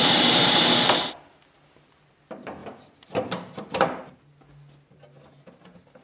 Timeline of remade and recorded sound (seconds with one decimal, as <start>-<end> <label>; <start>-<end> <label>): 0.0-2.1 remade; 2.1-2.6 recorded; 2.6-4.0 remade; 4.0-6.0 recorded